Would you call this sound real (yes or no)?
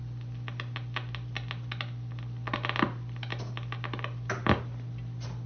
yes